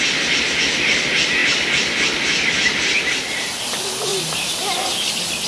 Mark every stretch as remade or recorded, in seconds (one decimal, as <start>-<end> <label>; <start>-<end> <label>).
0.0-4.1 recorded; 4.1-4.9 remade; 4.9-5.5 recorded